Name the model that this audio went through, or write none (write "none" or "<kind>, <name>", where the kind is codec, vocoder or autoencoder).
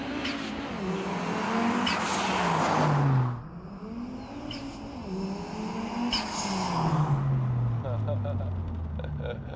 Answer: none